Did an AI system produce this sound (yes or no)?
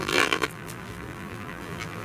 yes